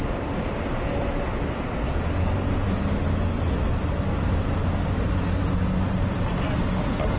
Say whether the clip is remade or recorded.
recorded